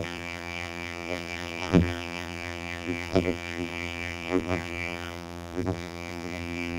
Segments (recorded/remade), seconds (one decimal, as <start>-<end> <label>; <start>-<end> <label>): 0.0-6.8 remade

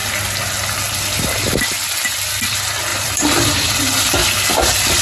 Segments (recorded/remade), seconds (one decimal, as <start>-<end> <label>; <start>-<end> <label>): 0.0-2.9 recorded; 2.9-3.8 remade; 3.8-5.0 recorded

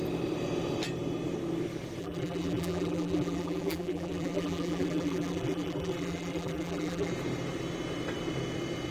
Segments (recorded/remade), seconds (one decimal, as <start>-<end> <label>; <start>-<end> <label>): 0.0-2.0 recorded; 2.0-7.1 remade; 7.1-8.9 recorded

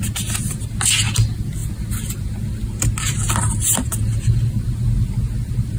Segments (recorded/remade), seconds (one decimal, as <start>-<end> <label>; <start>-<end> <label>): 0.0-5.8 recorded

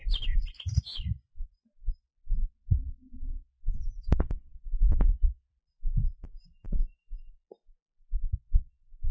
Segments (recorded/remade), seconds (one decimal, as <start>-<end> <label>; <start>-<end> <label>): 0.0-4.5 recorded; 4.5-5.1 remade; 5.1-9.1 recorded

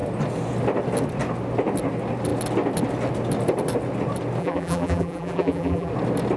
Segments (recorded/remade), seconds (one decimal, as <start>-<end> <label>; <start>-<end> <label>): 0.0-4.4 recorded; 4.4-5.9 remade; 5.9-6.4 recorded

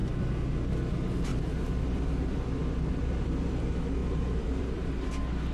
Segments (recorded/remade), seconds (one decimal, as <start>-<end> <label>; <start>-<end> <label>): 0.0-0.7 remade; 0.7-1.3 recorded; 1.3-3.6 remade; 3.6-4.0 recorded; 4.0-5.1 remade; 5.1-5.5 recorded